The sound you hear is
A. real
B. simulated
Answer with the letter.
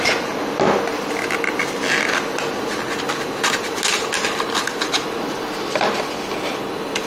A